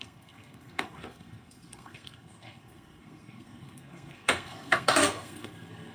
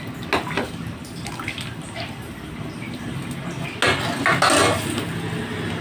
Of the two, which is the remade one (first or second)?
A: first